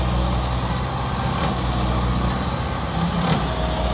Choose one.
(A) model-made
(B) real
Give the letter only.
B